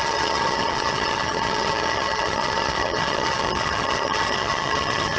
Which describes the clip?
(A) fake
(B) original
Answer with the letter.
A